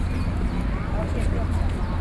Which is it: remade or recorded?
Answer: recorded